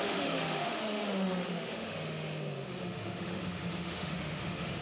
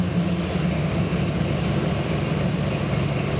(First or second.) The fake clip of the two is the first